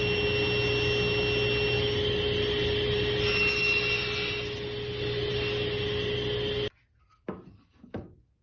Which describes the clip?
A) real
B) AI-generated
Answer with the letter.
A